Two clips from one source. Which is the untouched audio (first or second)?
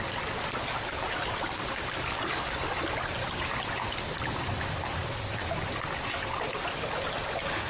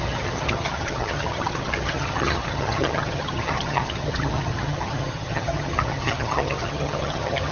first